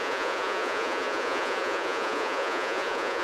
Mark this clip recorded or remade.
remade